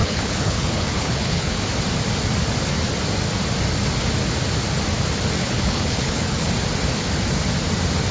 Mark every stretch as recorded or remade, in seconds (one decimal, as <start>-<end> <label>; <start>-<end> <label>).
0.0-1.6 remade; 1.6-5.4 recorded; 5.4-6.5 remade; 6.5-8.1 recorded